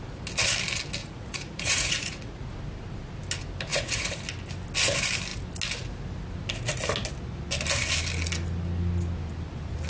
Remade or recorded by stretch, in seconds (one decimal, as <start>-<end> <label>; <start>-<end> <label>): 0.0-1.0 recorded; 1.0-2.5 remade; 2.5-3.7 recorded; 3.7-4.2 remade; 4.2-9.9 recorded